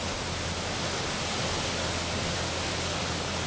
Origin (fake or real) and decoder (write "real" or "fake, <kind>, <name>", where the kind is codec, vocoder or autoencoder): real